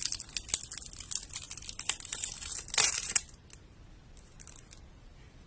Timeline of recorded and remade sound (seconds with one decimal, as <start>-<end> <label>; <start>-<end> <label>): 0.0-5.5 recorded